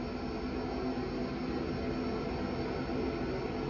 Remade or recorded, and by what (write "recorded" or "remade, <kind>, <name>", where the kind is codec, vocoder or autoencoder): recorded